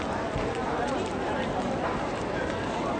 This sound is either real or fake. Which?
real